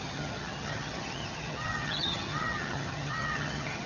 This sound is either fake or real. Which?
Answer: fake